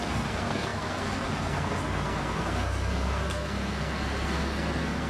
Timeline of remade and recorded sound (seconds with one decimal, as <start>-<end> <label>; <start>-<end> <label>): 0.0-5.1 remade